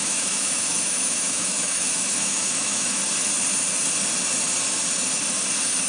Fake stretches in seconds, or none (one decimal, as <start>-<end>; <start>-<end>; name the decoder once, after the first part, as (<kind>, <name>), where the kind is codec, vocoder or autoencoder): 0.0-3.0 (autoencoder, DAC-VAE)